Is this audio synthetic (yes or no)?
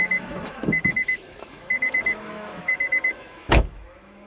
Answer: yes